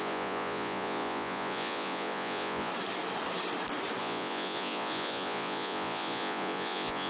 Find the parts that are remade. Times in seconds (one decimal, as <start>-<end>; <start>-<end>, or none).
0.0-2.7; 4.0-7.1